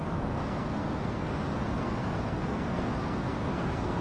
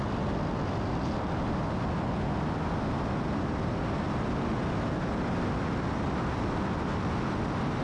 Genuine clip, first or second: second